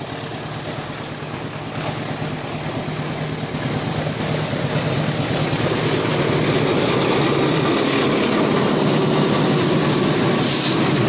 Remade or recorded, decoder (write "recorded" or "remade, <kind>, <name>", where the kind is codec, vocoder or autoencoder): recorded